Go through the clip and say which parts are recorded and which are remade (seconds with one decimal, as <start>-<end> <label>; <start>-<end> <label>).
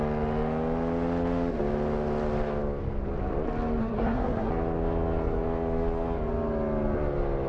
0.0-3.8 recorded; 3.8-4.5 remade; 4.5-7.5 recorded